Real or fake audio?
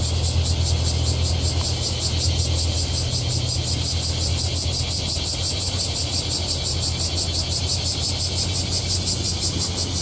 real